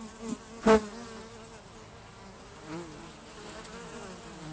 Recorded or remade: recorded